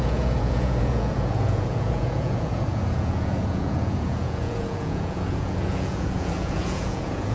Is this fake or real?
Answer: fake